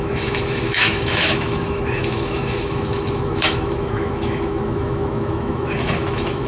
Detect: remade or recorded remade